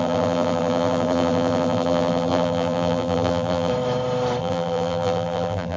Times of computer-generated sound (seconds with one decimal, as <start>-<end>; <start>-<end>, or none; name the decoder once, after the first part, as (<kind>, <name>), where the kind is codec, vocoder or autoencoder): 0.0-3.7 (vocoder, BigVGAN v2); 4.4-5.8